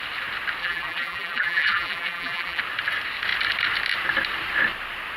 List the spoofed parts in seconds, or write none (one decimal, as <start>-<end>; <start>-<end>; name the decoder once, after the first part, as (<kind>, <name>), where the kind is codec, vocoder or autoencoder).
0.6-2.6 (vocoder, BigVGAN v2)